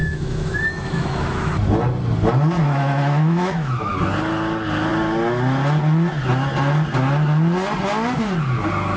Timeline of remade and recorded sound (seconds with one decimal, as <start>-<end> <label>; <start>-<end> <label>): 0.0-1.5 remade; 1.5-2.6 recorded; 2.6-3.9 remade; 3.9-9.0 recorded